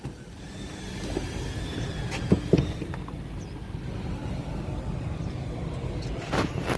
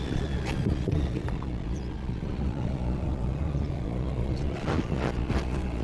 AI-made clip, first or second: second